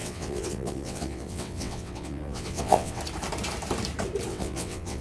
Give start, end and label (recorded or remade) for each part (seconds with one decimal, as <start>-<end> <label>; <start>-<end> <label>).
0.0-3.0 remade; 3.0-4.3 recorded; 4.3-5.0 remade